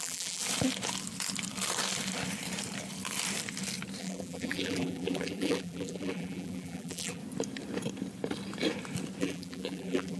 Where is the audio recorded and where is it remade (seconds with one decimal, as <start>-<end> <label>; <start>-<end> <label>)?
0.0-0.4 remade; 0.4-4.0 recorded; 4.0-7.2 remade; 7.2-9.2 recorded; 9.2-10.2 remade